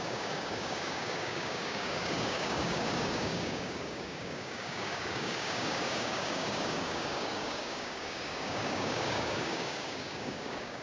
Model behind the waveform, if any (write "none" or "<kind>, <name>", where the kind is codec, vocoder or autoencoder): codec, DAC